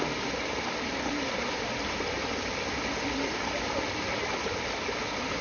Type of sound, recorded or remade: recorded